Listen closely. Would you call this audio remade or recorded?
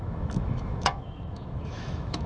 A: remade